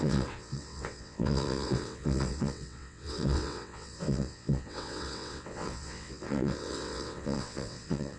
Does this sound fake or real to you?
fake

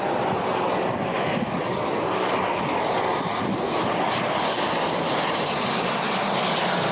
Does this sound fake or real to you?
real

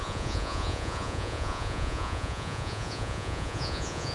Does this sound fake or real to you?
fake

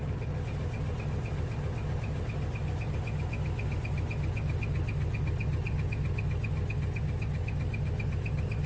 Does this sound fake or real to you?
real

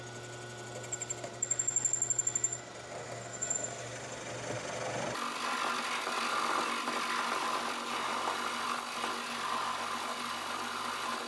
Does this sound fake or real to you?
real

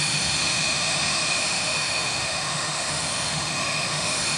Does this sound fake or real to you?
fake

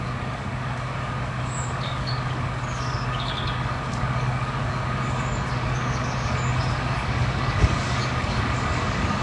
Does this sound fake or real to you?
fake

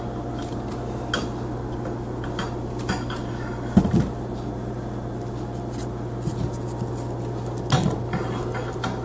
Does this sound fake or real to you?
real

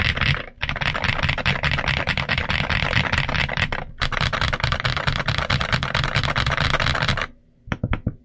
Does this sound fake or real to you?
real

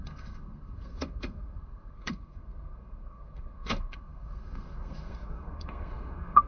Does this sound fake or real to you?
fake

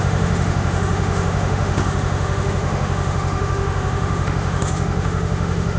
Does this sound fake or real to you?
fake